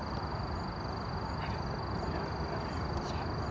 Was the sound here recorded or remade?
recorded